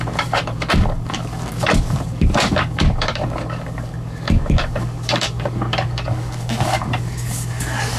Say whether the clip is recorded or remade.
remade